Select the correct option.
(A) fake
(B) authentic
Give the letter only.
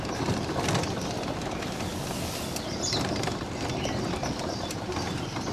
B